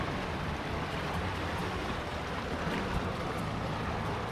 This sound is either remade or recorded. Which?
recorded